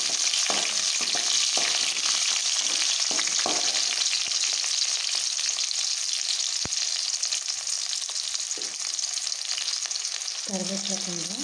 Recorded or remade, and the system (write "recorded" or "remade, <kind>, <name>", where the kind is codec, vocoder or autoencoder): recorded